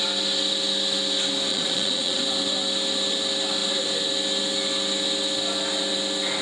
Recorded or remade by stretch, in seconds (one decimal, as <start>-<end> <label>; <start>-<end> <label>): 0.0-1.5 recorded; 1.5-2.2 remade; 2.2-6.4 recorded